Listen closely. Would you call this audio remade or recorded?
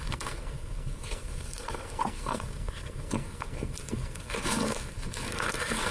remade